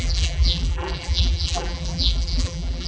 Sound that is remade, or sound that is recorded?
remade